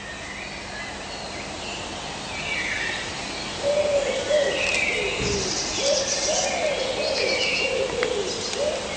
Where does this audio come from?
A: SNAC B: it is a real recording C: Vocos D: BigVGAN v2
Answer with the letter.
B